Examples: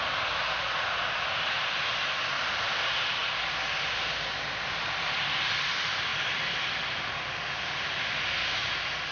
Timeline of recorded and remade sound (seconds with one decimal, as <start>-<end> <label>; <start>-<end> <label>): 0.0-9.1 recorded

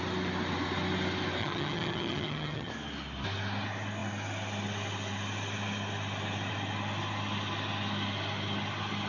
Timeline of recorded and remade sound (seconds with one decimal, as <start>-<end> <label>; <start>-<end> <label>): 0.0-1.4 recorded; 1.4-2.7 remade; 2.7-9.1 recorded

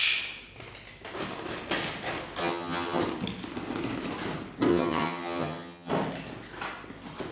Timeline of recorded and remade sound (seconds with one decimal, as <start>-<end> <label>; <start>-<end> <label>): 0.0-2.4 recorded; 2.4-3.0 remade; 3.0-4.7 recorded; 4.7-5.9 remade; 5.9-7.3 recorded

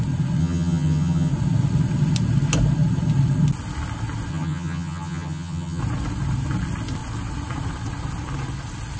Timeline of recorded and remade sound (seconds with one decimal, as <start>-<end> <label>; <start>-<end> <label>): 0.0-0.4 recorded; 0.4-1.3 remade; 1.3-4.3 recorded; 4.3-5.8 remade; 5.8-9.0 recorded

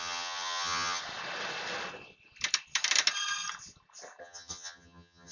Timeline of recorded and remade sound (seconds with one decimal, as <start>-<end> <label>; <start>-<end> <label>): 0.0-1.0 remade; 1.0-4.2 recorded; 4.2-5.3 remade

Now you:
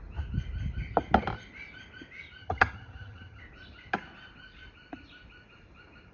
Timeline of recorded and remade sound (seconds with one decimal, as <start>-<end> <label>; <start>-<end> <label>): 0.0-2.4 recorded; 2.4-3.4 remade; 3.4-6.1 recorded

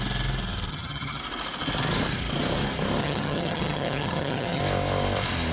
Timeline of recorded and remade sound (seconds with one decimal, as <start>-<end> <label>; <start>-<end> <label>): 0.0-0.7 recorded; 0.7-1.2 remade; 1.2-3.0 recorded; 3.0-4.6 remade; 4.6-5.5 recorded

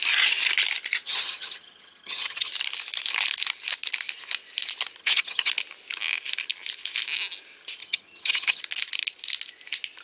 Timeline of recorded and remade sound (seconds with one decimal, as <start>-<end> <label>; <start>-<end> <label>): 0.0-1.0 recorded; 1.0-2.5 remade; 2.5-5.0 recorded; 5.0-5.5 remade; 5.5-7.8 recorded; 7.8-8.6 remade; 8.6-10.0 recorded